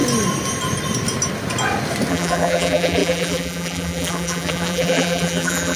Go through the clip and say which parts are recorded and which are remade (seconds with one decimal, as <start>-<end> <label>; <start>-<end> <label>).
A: 0.0-2.1 recorded; 2.1-5.8 remade